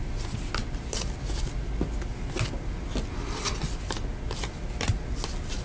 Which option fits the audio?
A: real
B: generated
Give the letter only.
A